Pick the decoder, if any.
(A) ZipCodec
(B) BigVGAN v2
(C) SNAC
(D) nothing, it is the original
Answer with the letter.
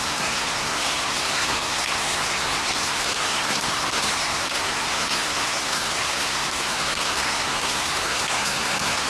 C